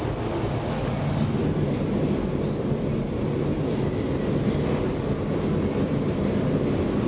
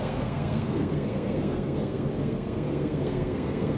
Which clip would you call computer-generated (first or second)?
second